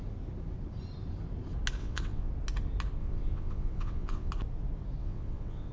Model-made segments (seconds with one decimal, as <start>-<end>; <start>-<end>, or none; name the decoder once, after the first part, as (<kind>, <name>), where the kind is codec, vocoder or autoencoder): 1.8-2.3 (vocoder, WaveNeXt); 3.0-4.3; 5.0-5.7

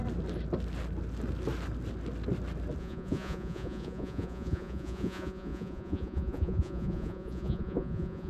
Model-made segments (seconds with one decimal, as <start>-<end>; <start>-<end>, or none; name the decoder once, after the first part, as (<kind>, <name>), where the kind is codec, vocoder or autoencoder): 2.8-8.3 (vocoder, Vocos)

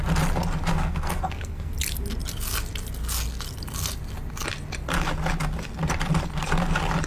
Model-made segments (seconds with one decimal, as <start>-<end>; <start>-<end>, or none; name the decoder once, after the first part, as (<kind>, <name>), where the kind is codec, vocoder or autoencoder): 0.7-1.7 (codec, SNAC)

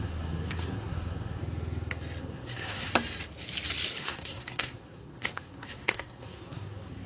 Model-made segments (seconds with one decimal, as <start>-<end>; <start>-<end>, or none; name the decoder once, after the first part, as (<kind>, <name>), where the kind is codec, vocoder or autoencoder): 0.0-1.4 (codec, SNAC); 2.2-2.9; 4.0-7.1